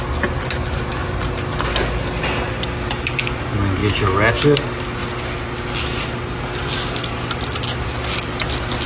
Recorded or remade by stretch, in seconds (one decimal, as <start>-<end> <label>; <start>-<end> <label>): 0.0-8.9 recorded